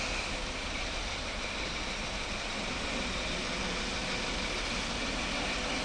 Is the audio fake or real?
real